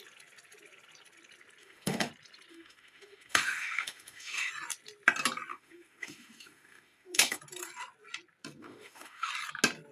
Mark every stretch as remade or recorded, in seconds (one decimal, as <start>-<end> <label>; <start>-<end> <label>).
0.0-1.6 recorded; 1.6-2.1 remade; 2.1-2.5 recorded; 2.5-4.5 remade; 4.5-5.5 recorded; 5.5-7.4 remade; 7.4-8.6 recorded; 8.6-9.3 remade; 9.3-9.9 recorded